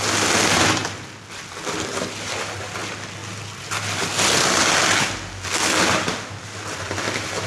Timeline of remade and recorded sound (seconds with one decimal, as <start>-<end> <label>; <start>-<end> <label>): 0.0-7.5 recorded